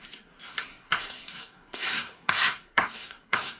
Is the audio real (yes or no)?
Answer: no